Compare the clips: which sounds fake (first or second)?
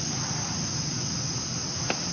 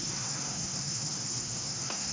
second